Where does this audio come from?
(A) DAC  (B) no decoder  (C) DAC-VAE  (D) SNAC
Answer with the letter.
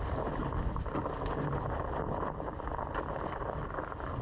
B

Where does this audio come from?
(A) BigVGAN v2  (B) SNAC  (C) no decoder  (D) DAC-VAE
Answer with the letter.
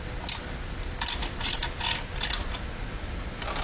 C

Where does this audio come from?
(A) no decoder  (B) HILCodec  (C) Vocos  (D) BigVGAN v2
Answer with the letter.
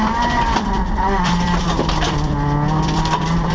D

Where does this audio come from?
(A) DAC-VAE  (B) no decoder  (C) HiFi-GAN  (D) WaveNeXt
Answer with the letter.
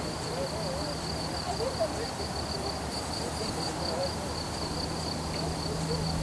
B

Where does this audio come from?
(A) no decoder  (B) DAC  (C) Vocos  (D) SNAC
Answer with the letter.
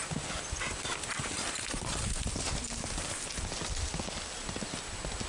A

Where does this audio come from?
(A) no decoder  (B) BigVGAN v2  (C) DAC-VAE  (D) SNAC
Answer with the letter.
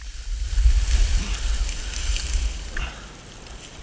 A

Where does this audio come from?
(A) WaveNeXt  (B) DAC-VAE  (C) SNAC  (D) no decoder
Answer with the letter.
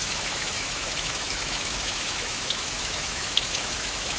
B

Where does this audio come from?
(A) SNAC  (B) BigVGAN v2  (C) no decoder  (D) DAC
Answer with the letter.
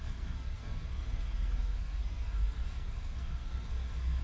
A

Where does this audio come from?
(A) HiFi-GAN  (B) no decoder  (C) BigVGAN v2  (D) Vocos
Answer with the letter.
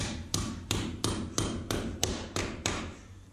C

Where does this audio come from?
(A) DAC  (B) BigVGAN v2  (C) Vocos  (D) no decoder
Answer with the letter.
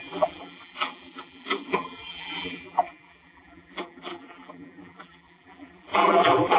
B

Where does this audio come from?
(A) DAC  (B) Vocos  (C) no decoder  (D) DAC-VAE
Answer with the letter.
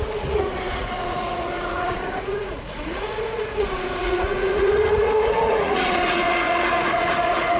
B